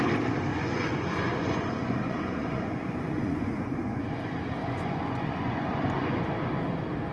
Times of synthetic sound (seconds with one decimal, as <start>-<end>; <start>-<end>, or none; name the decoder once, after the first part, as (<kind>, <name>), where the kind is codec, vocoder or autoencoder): 0.5-4.0 (vocoder, Vocos); 4.6-6.2